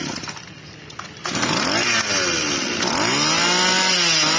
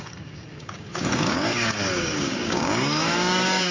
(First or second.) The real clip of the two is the first